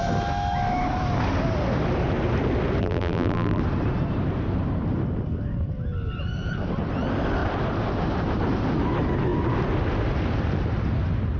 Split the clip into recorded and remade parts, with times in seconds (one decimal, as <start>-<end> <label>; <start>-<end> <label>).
0.0-2.8 recorded; 2.8-3.6 remade; 3.6-11.4 recorded